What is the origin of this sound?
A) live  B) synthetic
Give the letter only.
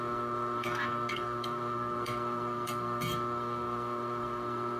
B